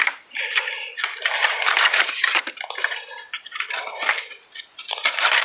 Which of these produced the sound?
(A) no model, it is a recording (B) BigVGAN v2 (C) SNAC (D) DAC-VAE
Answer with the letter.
A